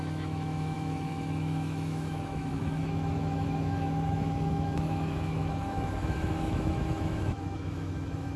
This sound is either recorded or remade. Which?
remade